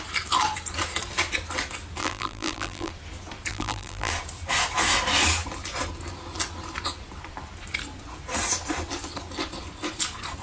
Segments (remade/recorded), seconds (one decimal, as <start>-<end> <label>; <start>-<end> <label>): 0.0-2.0 recorded; 2.0-2.9 remade; 2.9-3.5 recorded; 3.5-4.1 remade; 4.1-10.4 recorded